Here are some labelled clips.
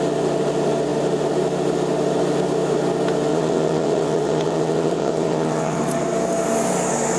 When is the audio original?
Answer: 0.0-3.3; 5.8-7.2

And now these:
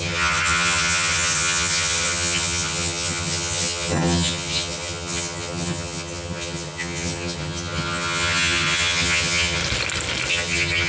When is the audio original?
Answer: 9.6-10.3

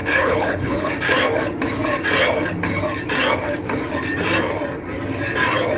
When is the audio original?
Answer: 0.9-5.8

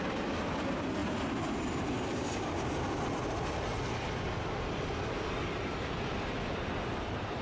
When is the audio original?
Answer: 0.0-7.4